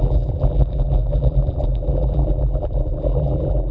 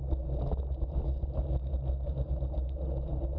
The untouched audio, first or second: second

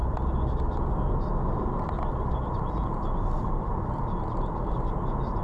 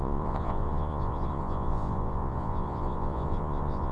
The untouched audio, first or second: first